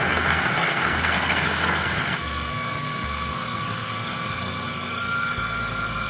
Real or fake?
fake